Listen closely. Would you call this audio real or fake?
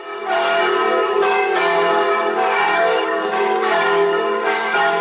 fake